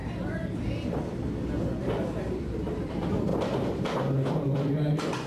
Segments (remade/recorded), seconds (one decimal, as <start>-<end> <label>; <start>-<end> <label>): 0.0-2.2 recorded; 2.2-3.3 remade; 3.3-4.4 recorded; 4.4-5.3 remade